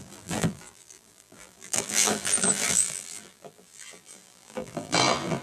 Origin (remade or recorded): remade